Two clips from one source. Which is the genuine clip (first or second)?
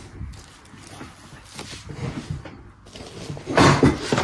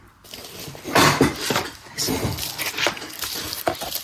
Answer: first